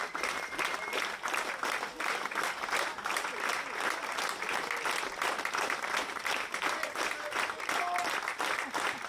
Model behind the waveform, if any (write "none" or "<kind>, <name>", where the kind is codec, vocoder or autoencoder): none